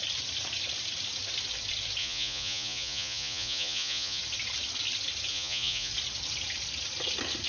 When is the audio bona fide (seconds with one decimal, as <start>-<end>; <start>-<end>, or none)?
0.0-2.0; 4.2-5.3; 5.9-7.5